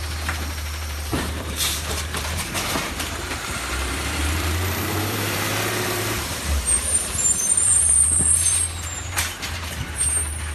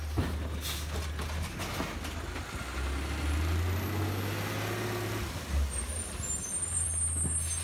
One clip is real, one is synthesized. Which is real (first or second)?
second